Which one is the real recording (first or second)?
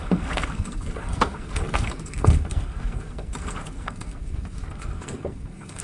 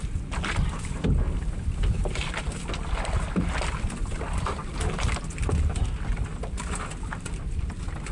second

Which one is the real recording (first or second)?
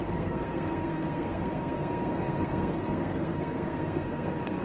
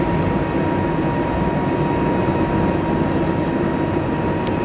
second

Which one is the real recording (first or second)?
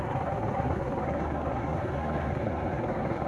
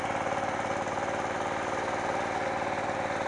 second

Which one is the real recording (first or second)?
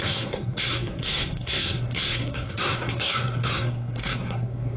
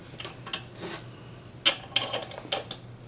second